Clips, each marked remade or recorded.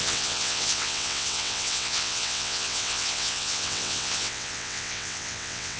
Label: remade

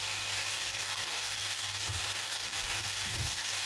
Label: remade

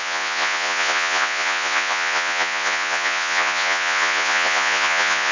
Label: remade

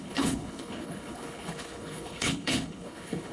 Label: remade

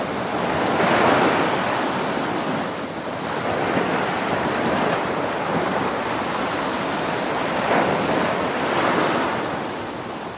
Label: recorded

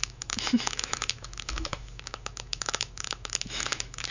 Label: remade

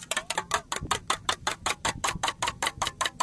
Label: remade